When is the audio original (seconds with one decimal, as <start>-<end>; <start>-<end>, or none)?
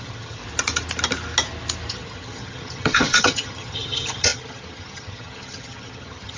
0.4-1.9